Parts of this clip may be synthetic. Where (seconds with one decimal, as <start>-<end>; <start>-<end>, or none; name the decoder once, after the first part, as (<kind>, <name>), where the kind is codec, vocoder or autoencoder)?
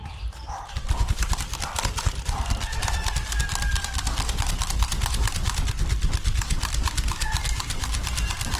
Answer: 0.0-6.2 (vocoder, BigVGAN v2); 6.7-8.6